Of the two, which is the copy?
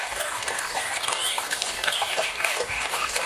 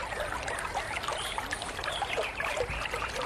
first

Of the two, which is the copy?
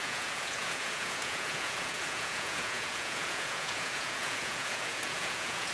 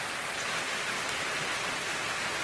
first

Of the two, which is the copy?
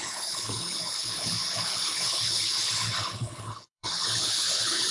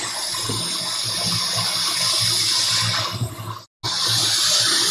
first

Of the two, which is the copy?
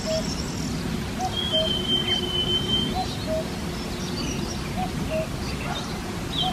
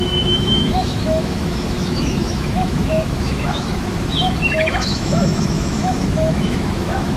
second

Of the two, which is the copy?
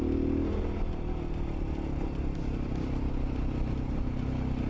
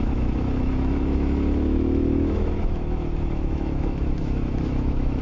second